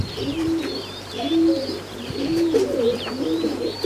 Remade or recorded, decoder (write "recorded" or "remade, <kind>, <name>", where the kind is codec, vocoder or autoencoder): remade, vocoder, BigVGAN v2